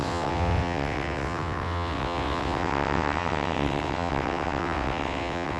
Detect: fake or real fake